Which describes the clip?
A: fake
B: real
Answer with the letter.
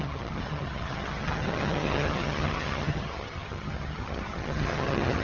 A